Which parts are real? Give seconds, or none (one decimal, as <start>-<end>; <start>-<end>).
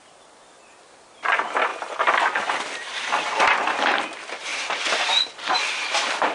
0.0-6.3